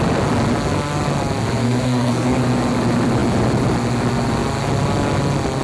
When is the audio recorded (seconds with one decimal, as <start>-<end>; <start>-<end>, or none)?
0.0-1.6; 2.4-5.6